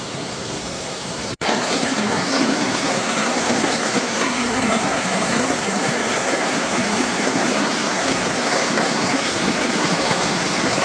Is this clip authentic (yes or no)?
no